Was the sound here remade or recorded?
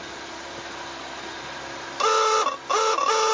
recorded